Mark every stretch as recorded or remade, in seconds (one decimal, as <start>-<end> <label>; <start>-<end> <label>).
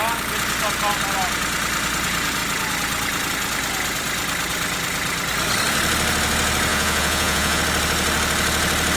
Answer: 0.0-6.7 recorded; 6.7-7.6 remade; 7.6-9.0 recorded